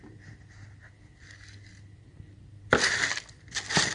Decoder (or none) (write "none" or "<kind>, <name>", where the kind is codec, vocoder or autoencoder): none